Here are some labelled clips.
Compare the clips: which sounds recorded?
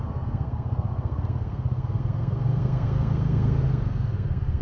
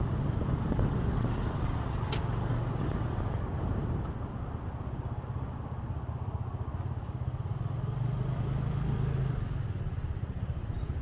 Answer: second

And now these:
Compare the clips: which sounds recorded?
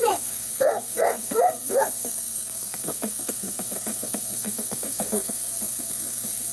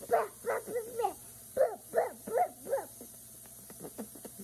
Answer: second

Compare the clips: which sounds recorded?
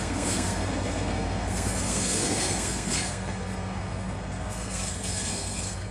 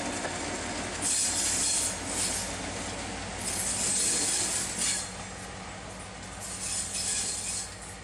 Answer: second